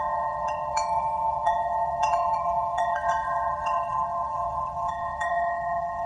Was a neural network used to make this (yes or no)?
yes